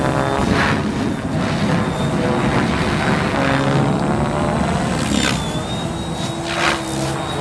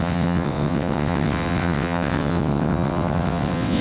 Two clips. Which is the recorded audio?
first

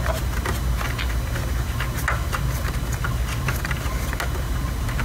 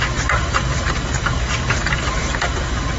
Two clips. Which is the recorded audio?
first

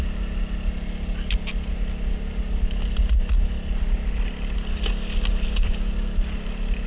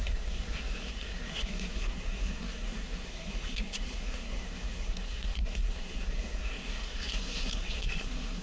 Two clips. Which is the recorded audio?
first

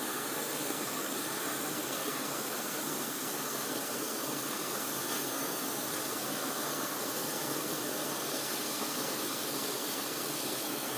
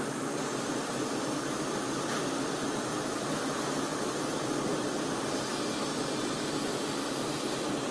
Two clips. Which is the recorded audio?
second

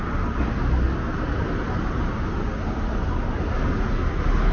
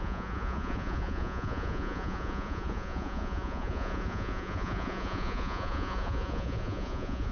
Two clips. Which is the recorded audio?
first